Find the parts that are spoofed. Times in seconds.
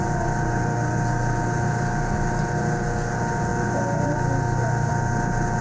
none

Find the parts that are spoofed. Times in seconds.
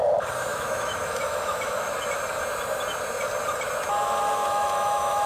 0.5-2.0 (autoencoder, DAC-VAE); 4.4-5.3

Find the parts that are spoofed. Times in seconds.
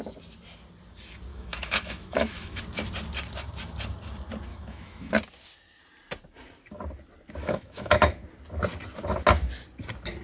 1.3-2.6 (autoencoder, DAC-VAE); 4.5-5.1; 7.4-8.2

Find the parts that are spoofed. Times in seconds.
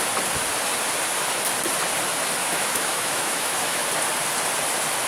2.4-3.9 (autoencoder, DAC-VAE)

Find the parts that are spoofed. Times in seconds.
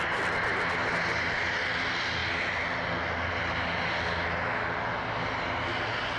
none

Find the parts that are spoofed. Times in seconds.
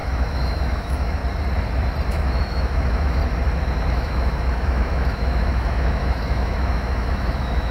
0.0-1.2 (autoencoder, DAC-VAE); 2.1-3.2; 3.9-7.7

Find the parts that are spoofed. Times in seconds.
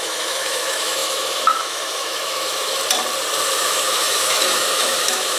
0.0-2.8 (autoencoder, DAC-VAE); 3.6-5.4